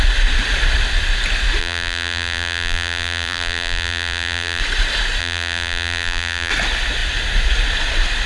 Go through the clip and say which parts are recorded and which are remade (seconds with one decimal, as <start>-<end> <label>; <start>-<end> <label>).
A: 0.0-1.6 recorded; 1.6-4.6 remade; 4.6-5.2 recorded; 5.2-6.5 remade; 6.5-8.3 recorded